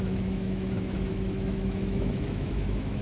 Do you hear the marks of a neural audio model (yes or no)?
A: yes